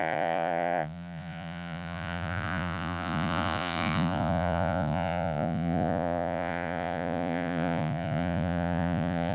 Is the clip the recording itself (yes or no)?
no